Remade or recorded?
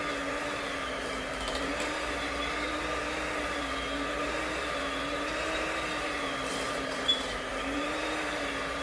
remade